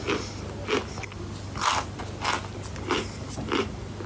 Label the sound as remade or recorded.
recorded